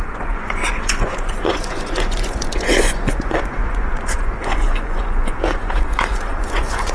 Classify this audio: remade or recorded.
remade